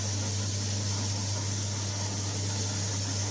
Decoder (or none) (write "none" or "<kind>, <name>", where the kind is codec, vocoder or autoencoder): none